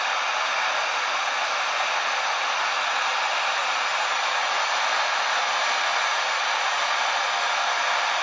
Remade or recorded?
recorded